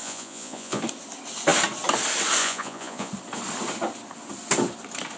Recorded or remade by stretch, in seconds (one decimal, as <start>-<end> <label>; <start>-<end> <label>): 0.0-0.8 remade; 0.8-2.4 recorded; 2.4-3.1 remade; 3.1-5.2 recorded

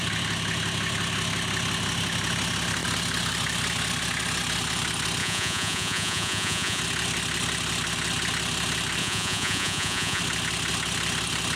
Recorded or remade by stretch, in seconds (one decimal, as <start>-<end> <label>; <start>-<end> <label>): 0.0-5.2 recorded; 5.2-6.8 remade; 6.8-9.0 recorded; 9.0-10.2 remade; 10.2-11.6 recorded

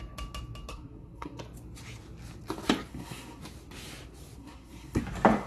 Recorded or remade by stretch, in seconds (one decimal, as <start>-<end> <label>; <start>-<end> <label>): 0.0-0.7 recorded; 0.7-1.4 remade; 1.4-2.9 recorded; 2.9-3.4 remade; 3.4-4.4 recorded; 4.4-5.0 remade; 5.0-5.5 recorded

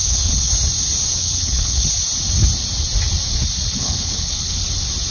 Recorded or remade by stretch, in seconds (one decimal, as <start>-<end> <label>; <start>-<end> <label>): 0.0-0.5 remade; 0.5-1.1 recorded; 1.1-1.9 remade; 1.9-3.7 recorded; 3.7-4.6 remade; 4.6-5.1 recorded

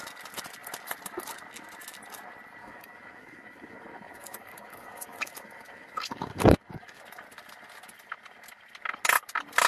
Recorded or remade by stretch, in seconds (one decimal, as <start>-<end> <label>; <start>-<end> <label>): 0.0-2.6 recorded; 2.6-7.0 remade; 7.0-9.7 recorded

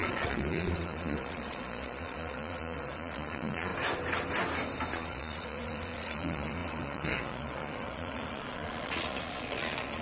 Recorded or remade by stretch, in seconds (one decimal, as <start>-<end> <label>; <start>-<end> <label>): 0.0-3.7 remade; 3.7-4.9 recorded; 4.9-10.0 remade